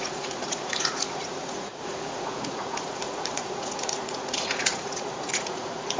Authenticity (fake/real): fake